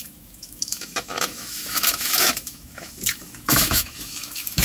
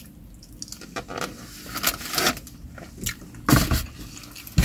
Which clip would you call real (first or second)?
second